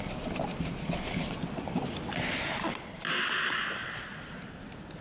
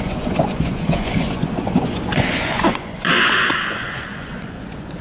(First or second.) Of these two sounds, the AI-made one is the second